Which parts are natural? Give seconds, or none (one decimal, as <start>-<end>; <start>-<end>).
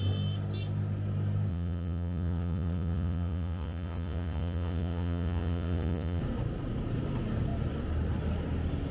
0.0-1.5; 6.2-8.9